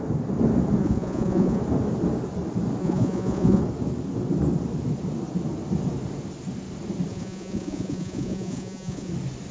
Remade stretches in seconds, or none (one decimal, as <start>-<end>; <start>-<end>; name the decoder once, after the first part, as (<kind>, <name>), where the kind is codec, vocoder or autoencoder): 0.8-1.6 (vocoder, Vocos); 2.8-3.6; 7.1-9.1